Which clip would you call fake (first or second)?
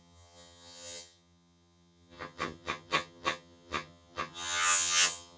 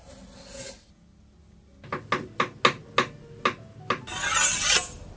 first